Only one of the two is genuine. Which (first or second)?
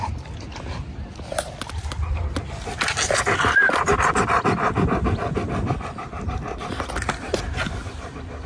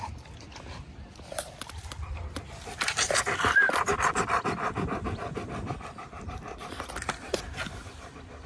first